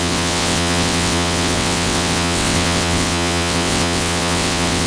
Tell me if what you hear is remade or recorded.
remade